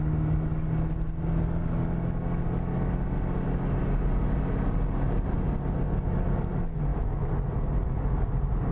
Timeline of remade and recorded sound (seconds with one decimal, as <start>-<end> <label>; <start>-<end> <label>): 0.0-8.7 recorded

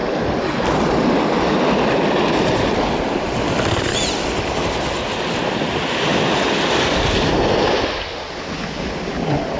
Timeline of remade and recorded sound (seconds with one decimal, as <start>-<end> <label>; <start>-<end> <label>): 0.0-6.1 recorded; 6.1-7.0 remade; 7.0-9.6 recorded

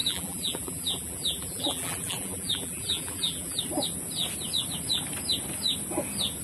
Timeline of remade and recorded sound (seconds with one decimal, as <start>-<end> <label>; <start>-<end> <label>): 0.0-3.6 remade; 3.6-6.4 recorded